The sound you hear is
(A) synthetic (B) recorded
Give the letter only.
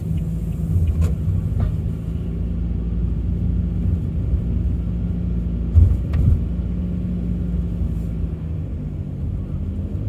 B